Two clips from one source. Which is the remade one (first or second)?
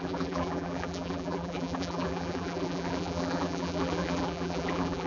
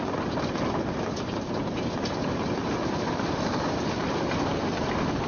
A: first